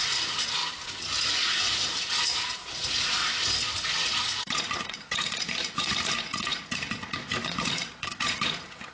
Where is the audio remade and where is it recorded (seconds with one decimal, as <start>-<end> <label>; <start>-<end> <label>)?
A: 0.0-0.6 remade; 0.6-1.5 recorded; 1.5-3.2 remade; 3.2-4.1 recorded; 4.1-8.9 remade